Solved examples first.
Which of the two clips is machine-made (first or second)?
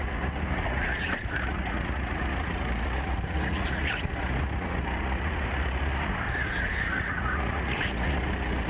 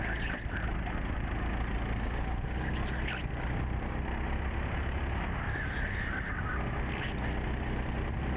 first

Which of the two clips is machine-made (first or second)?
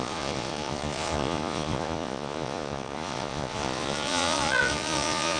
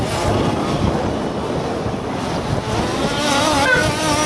first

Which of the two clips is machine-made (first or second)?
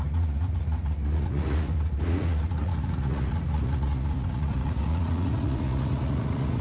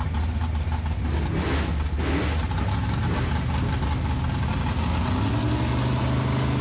first